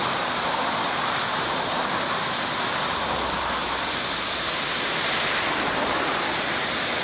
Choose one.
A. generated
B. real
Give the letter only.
A